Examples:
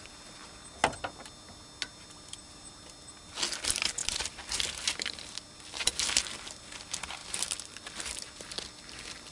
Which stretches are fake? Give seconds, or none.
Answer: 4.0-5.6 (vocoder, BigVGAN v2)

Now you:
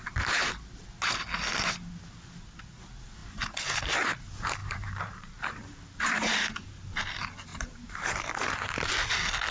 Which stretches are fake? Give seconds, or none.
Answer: 3.2-3.8 (vocoder, BigVGAN v2); 4.6-6.6; 7.5-8.5

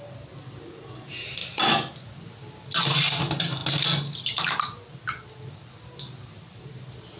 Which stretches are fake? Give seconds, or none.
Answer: none

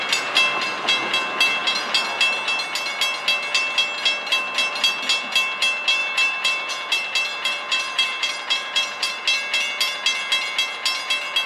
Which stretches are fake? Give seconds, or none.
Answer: 6.0-6.7 (vocoder, BigVGAN v2); 7.3-9.2